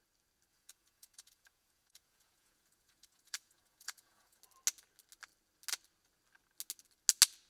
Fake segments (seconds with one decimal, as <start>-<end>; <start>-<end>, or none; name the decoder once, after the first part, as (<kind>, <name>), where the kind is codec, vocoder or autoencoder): 0.5-4.4 (vocoder, Vocos)